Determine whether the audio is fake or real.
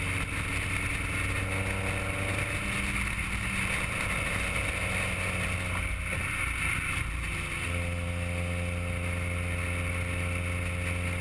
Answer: real